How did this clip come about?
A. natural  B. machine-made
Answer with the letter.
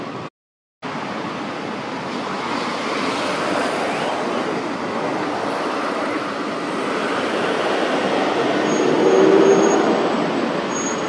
A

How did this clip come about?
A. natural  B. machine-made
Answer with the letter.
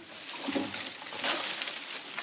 A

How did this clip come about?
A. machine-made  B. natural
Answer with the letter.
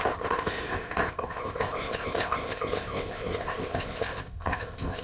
A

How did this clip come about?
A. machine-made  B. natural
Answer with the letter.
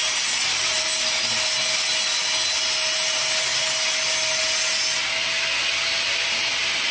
B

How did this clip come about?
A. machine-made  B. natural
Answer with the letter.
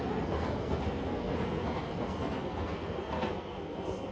A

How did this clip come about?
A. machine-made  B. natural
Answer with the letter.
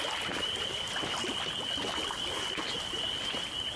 B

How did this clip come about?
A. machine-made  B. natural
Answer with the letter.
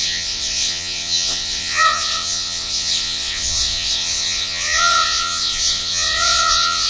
A